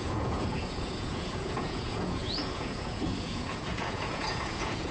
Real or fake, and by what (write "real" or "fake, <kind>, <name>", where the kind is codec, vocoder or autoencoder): fake, vocoder, Vocos